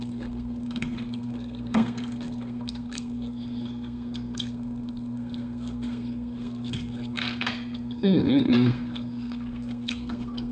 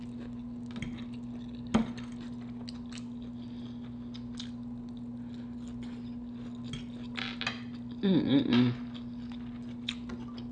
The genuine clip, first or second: second